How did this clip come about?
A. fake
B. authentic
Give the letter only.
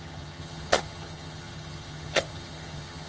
A